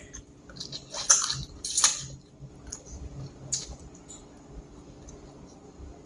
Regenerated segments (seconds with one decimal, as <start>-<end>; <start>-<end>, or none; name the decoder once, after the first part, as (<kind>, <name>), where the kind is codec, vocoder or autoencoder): none